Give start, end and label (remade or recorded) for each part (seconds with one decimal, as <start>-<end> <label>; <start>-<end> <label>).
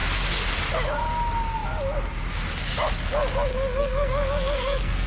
0.0-3.5 recorded; 3.5-5.1 remade